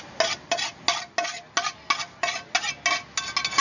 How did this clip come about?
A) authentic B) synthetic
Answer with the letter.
A